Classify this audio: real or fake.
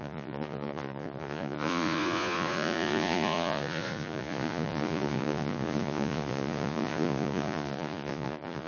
fake